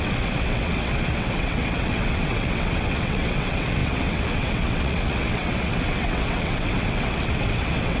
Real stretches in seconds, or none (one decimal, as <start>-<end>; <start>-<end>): none